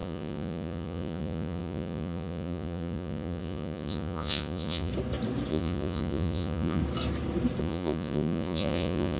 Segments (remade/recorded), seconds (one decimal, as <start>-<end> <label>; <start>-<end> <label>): 0.0-4.9 remade; 4.9-5.5 recorded; 5.5-6.8 remade; 6.8-7.6 recorded; 7.6-9.2 remade

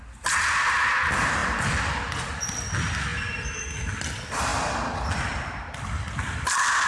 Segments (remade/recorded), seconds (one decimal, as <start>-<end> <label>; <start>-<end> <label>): 0.0-6.9 recorded

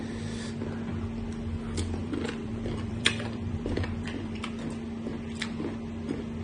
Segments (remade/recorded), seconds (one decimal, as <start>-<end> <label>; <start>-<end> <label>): 0.0-2.0 recorded; 2.0-4.4 remade; 4.4-6.4 recorded

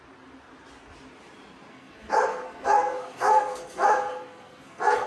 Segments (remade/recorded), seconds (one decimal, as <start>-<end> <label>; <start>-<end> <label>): 0.0-1.7 recorded; 1.7-5.1 remade

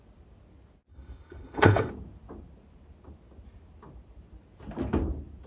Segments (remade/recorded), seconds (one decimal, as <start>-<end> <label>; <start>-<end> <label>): 0.0-0.9 recorded; 0.9-1.9 remade; 1.9-5.5 recorded

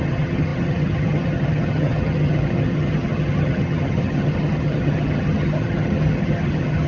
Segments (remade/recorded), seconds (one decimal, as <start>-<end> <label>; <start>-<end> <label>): 0.0-6.9 remade